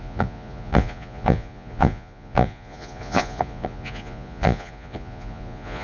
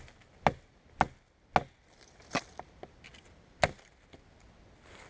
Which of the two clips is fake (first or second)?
first